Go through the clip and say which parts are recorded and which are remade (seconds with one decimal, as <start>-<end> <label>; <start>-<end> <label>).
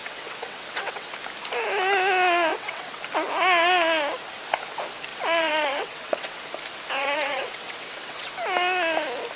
0.0-1.1 remade; 1.1-2.5 recorded; 2.5-3.0 remade; 3.0-5.1 recorded; 5.1-6.4 remade; 6.4-7.0 recorded; 7.0-8.3 remade; 8.3-9.4 recorded